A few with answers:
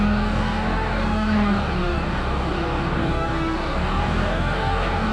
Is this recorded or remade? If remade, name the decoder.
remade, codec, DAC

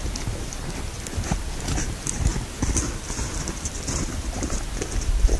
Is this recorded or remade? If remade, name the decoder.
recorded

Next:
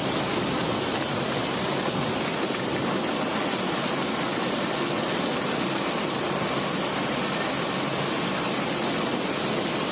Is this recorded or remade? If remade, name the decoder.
recorded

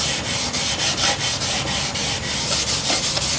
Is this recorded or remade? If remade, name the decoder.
recorded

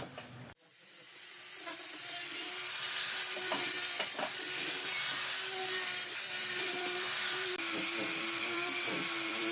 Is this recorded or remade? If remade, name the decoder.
remade, vocoder, BigVGAN v2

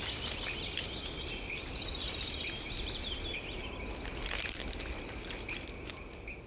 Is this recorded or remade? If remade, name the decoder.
recorded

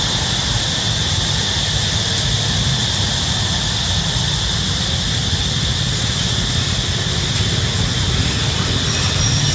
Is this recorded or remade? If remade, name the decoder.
recorded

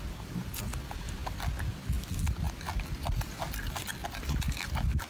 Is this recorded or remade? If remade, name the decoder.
recorded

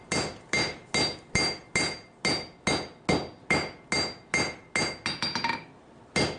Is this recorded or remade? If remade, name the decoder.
recorded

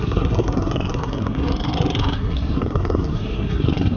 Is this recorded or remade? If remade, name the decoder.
remade, codec, SNAC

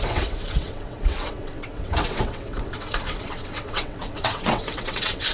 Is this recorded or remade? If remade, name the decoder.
remade, vocoder, WaveNeXt